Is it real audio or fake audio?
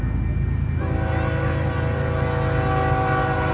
real